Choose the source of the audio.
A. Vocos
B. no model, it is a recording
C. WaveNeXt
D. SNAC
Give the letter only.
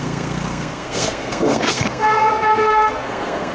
D